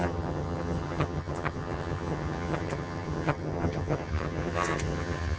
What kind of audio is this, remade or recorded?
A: remade